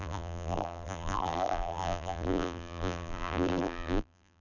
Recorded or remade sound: remade